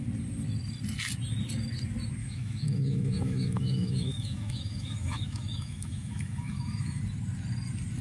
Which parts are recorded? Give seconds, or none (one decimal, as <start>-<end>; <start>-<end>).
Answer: 0.0-2.2; 7.0-8.0